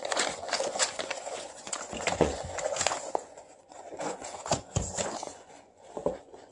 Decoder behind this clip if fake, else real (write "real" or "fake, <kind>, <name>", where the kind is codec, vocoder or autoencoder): fake, vocoder, Vocos